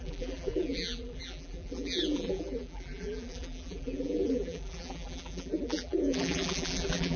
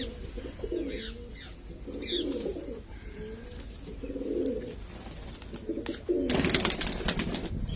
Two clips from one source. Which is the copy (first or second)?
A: first